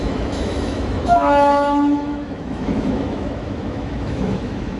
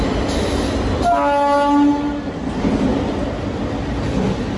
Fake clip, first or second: first